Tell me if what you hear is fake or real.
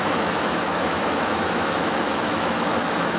fake